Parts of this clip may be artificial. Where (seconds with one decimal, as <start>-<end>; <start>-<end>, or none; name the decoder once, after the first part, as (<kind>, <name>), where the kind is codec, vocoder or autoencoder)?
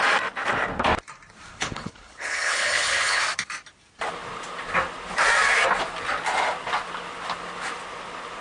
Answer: 1.5-3.2 (codec, HILCodec)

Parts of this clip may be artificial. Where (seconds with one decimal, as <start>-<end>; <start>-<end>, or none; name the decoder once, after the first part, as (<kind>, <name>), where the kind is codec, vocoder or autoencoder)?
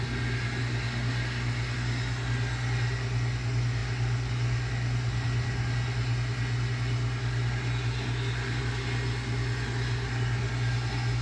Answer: none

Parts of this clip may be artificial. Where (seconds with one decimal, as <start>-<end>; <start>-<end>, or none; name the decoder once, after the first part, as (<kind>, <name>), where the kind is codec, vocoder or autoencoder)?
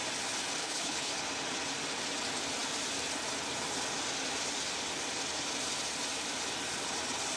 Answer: 0.6-1.1 (codec, HILCodec)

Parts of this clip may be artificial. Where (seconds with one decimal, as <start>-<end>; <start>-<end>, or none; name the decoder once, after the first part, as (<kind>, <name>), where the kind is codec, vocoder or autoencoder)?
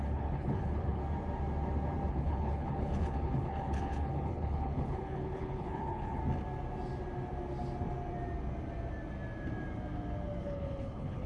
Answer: 0.0-1.0 (codec, HILCodec); 2.1-6.2; 10.4-11.3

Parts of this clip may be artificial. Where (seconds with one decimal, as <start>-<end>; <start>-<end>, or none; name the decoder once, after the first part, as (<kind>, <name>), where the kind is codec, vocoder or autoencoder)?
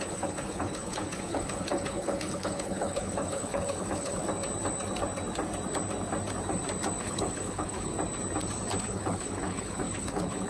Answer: 0.0-4.2 (codec, HILCodec); 7.0-7.9; 8.8-10.5